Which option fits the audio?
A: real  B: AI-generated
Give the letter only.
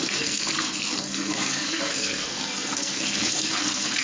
B